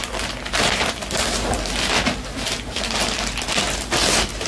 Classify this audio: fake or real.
real